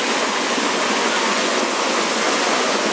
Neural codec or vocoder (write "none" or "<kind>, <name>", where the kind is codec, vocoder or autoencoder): vocoder, Vocos